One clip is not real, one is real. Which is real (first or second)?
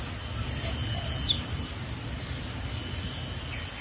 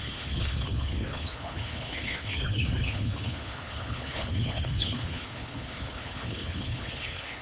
first